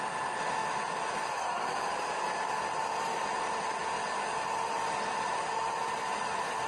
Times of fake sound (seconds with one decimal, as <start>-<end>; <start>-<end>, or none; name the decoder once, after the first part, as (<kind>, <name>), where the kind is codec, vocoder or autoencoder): none